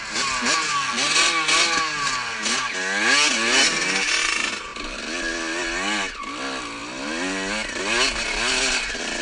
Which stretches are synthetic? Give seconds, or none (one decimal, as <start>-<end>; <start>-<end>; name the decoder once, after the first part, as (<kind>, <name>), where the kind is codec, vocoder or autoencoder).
none